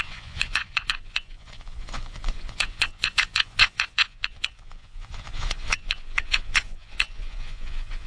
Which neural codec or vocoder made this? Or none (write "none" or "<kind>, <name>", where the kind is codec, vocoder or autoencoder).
vocoder, Vocos